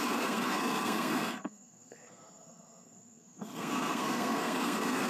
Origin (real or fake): fake